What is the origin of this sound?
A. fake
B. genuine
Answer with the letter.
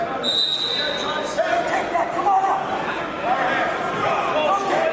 B